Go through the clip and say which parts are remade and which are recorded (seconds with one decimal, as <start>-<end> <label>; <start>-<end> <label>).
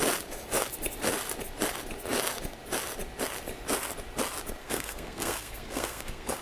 0.0-4.6 recorded; 4.6-6.4 remade